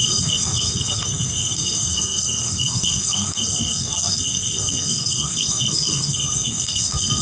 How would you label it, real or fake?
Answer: fake